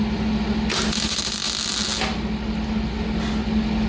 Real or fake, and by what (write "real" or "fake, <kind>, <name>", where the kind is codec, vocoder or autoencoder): real